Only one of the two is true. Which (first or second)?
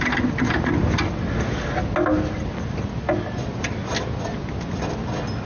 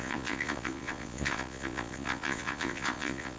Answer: first